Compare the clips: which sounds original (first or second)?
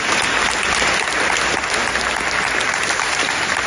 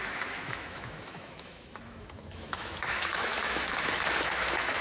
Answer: first